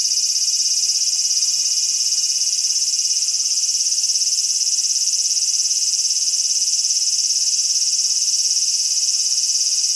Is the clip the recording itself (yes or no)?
no